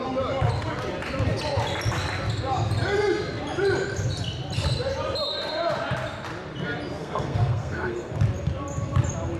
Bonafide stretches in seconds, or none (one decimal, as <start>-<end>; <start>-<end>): 0.0-7.0; 8.1-9.4